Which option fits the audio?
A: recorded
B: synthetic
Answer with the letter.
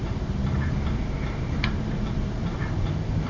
B